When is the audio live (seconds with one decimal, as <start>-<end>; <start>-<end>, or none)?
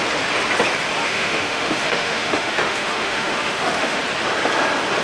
0.0-1.0; 4.0-5.0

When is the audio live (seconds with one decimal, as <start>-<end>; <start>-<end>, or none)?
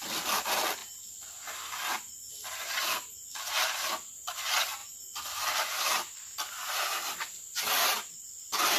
0.0-8.8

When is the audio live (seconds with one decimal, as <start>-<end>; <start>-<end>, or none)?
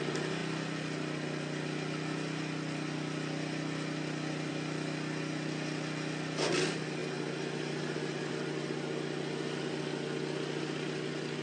0.0-11.4